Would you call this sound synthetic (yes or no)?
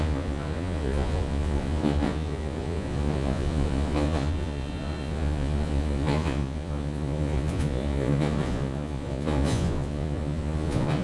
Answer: yes